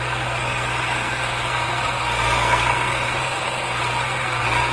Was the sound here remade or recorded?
remade